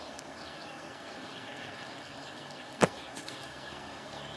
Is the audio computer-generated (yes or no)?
yes